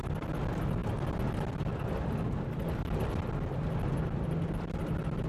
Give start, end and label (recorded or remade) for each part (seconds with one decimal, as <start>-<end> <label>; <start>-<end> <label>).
0.0-5.3 recorded